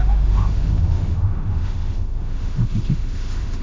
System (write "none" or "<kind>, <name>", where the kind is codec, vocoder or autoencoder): autoencoder, DAC-VAE